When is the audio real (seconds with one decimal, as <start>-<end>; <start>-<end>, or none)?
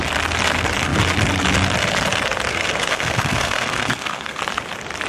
0.0-2.5; 4.4-5.1